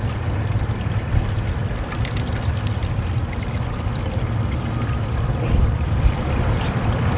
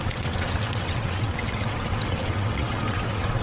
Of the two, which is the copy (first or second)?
second